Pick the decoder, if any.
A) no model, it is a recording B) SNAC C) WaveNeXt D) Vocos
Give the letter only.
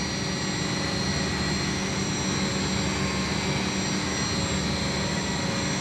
A